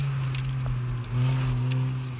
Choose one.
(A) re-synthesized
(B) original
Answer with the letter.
B